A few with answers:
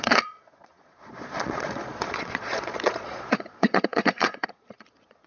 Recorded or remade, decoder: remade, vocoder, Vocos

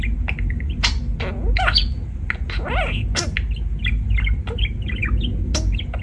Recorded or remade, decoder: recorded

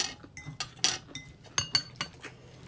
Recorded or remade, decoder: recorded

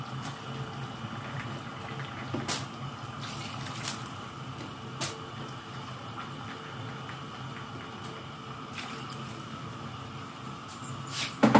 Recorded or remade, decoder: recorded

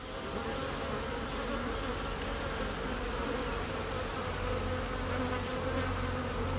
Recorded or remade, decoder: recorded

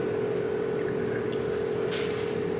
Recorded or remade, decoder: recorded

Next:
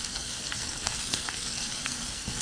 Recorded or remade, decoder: remade, codec, SNAC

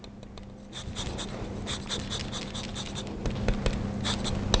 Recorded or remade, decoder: recorded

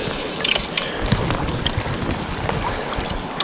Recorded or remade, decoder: recorded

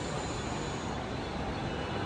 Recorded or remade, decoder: recorded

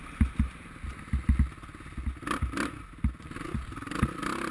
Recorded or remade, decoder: recorded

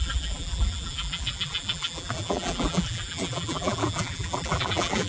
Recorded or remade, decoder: remade, vocoder, BigVGAN v2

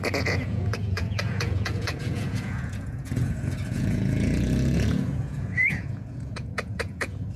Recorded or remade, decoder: remade, vocoder, Vocos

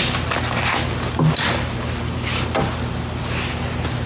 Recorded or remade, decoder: recorded